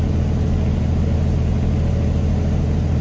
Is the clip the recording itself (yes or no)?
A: yes